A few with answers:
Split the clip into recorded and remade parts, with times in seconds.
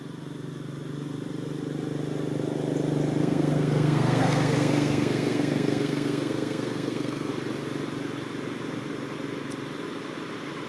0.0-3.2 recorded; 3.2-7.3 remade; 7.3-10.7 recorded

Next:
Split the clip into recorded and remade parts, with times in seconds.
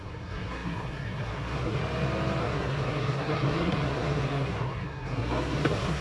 0.0-1.8 remade; 1.8-2.4 recorded; 2.4-6.0 remade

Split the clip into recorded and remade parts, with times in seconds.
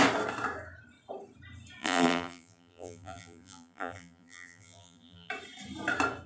0.0-1.8 recorded; 1.8-5.3 remade; 5.3-6.3 recorded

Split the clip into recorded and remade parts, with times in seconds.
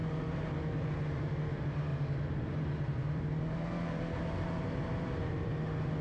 0.0-1.3 remade; 1.3-1.9 recorded; 1.9-5.5 remade; 5.5-6.0 recorded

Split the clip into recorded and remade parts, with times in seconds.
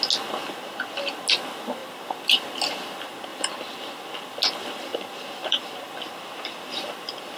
0.0-1.8 recorded; 1.8-2.4 remade; 2.4-3.3 recorded; 3.3-3.9 remade; 3.9-4.9 recorded; 4.9-6.1 remade; 6.1-7.4 recorded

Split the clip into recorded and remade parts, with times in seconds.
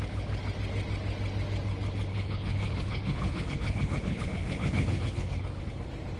0.0-2.1 recorded; 2.1-5.6 remade; 5.6-6.2 recorded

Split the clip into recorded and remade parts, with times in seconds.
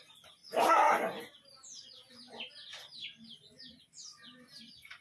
0.0-5.0 recorded